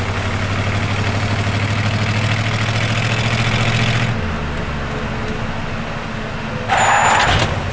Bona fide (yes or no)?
yes